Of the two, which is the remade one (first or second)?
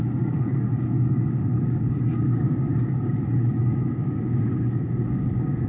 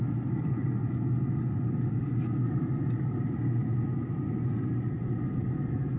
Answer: first